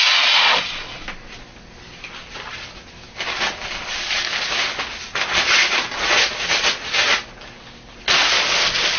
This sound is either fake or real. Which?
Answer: real